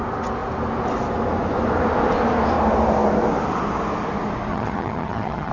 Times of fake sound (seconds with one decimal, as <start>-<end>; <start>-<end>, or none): 4.5-5.5